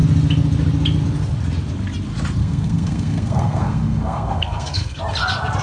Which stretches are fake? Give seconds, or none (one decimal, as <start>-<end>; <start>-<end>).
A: 2.4-5.0